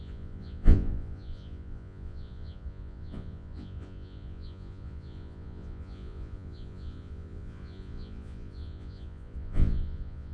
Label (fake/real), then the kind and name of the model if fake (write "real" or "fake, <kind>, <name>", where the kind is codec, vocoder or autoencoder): fake, vocoder, Vocos